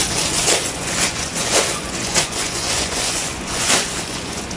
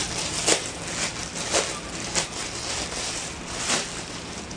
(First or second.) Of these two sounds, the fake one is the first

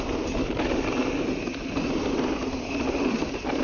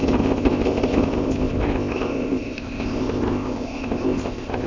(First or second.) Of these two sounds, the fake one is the second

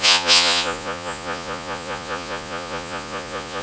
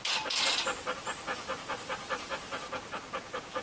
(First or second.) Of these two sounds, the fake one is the first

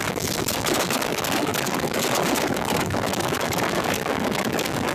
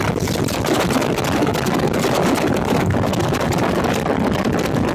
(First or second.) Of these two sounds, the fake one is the first